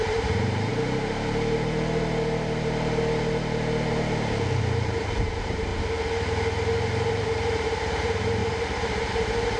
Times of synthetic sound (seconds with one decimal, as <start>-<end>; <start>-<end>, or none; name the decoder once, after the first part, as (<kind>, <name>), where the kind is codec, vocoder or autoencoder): 0.0-0.7 (vocoder, BigVGAN v2); 4.6-5.7; 7.1-8.4; 9.1-9.6